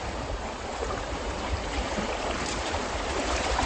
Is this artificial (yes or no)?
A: yes